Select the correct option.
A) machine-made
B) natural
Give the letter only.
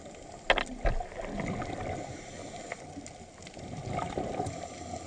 B